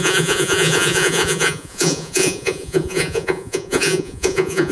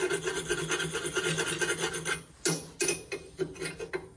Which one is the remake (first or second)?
first